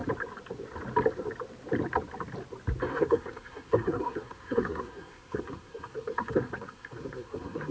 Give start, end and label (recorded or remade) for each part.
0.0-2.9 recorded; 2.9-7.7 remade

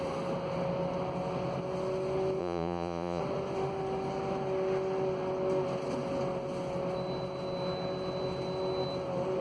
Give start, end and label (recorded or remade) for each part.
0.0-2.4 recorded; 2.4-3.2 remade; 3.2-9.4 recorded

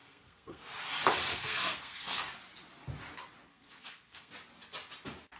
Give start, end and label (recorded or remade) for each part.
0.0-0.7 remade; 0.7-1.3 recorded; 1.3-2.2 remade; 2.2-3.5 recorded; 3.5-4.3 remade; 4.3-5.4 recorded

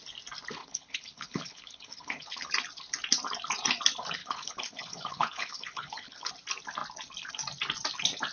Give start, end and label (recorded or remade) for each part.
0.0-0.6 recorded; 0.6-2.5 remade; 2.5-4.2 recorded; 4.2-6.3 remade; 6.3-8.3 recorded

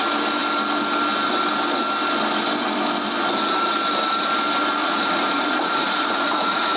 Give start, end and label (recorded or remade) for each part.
0.0-4.8 recorded; 4.8-6.8 remade

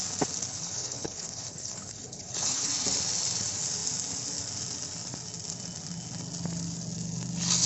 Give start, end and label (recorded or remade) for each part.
0.0-0.5 recorded; 0.5-2.7 remade; 2.7-7.7 recorded

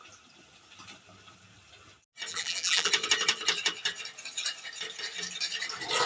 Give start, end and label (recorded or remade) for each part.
0.0-2.3 recorded; 2.3-2.9 remade; 2.9-6.1 recorded

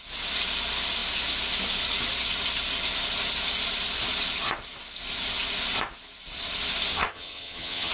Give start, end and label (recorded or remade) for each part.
0.0-6.9 recorded; 6.9-7.9 remade